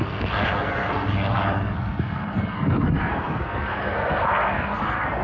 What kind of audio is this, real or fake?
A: fake